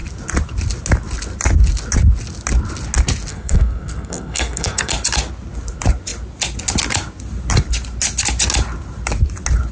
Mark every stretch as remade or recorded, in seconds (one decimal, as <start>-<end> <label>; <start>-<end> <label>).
0.0-3.3 recorded; 3.3-4.9 remade; 4.9-9.7 recorded